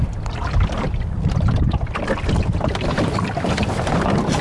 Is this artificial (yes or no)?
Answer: yes